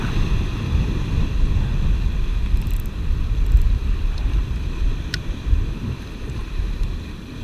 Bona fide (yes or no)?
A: yes